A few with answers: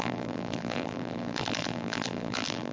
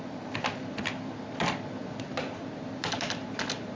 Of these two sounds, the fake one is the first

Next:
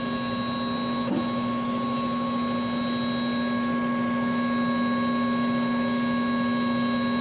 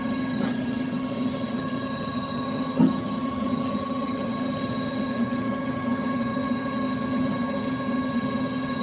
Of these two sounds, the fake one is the second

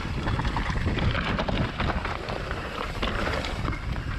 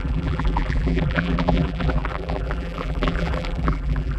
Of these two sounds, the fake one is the second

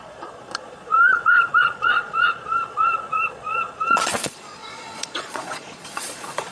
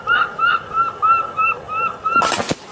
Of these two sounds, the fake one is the first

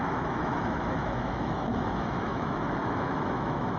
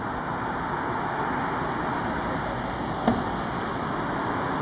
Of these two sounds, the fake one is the first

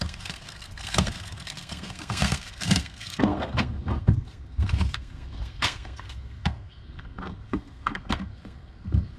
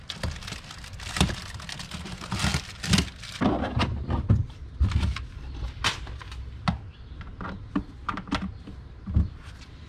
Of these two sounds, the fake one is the first